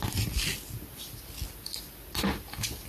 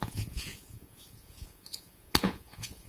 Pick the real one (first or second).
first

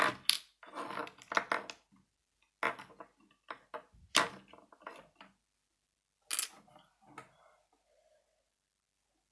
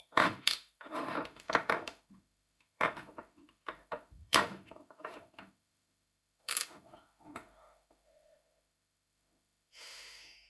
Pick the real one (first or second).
first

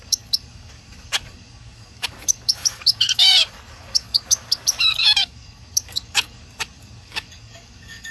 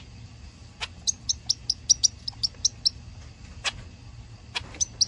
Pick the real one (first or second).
second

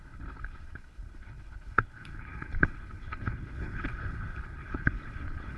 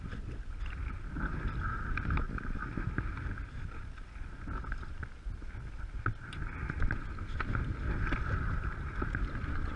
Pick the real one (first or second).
second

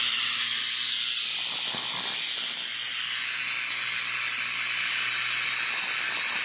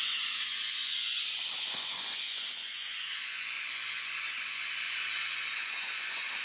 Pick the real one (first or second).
first